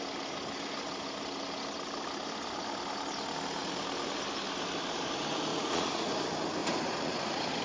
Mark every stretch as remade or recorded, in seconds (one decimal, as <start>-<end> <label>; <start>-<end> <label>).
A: 0.0-5.5 recorded; 5.5-6.1 remade; 6.1-6.6 recorded; 6.6-7.6 remade